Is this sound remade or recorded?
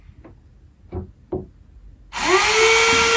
recorded